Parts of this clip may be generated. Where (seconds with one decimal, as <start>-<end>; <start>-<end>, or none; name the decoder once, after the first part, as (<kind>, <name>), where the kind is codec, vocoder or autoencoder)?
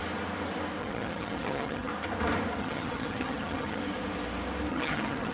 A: 0.8-1.9 (vocoder, HiFi-GAN); 2.6-3.8; 4.7-5.3